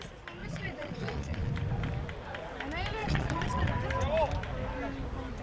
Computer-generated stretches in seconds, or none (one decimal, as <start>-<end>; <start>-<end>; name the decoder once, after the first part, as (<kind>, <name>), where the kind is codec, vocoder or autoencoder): 0.4-1.5 (vocoder, Vocos); 3.0-3.7